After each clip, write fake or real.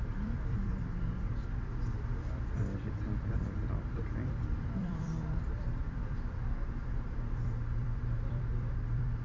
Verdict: fake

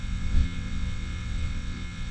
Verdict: fake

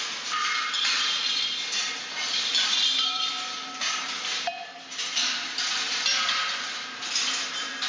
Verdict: fake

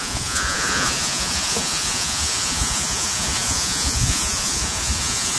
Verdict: fake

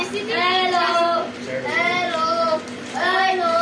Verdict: real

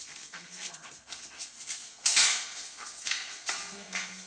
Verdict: fake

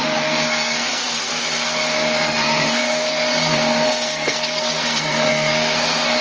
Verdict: fake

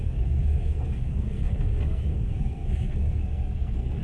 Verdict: fake